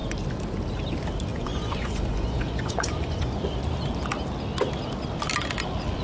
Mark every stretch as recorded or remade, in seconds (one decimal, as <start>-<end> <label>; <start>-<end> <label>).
0.0-1.3 recorded; 1.3-3.4 remade; 3.4-6.0 recorded